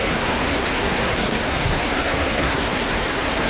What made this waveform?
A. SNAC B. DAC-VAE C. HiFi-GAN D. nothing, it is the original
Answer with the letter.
A